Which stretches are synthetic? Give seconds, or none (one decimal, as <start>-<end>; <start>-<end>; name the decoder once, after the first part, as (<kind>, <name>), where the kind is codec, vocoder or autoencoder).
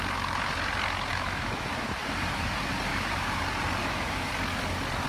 1.1-1.9 (autoencoder, DAC-VAE); 2.9-3.4; 3.8-4.3